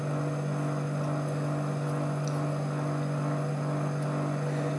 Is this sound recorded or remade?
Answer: recorded